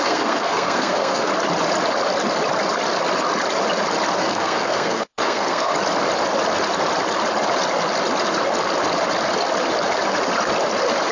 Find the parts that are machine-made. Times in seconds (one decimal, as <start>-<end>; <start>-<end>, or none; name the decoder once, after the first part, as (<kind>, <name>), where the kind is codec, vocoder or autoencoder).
0.0-1.3 (codec, SNAC); 4.2-5.7